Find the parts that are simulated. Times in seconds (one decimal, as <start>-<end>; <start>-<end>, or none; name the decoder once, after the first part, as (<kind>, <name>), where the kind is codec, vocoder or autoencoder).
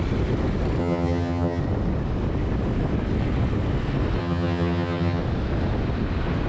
0.8-1.6 (vocoder, HiFi-GAN); 4.2-5.2